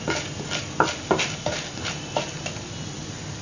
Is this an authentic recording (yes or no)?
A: yes